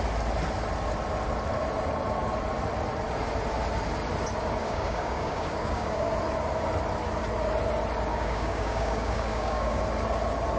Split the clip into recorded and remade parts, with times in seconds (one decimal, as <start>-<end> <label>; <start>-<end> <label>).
0.0-4.6 recorded; 4.6-6.1 remade; 6.1-8.1 recorded; 8.1-9.8 remade; 9.8-10.6 recorded